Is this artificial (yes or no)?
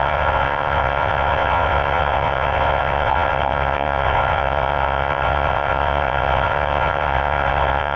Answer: yes